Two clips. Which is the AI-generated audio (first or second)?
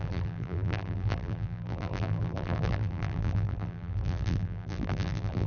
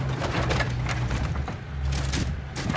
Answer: first